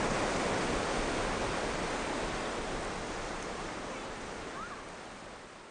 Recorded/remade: recorded